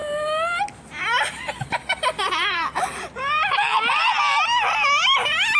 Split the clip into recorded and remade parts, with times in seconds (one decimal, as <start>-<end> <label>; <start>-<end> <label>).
0.0-0.6 remade; 0.6-1.0 recorded; 1.0-4.0 remade; 4.0-5.6 recorded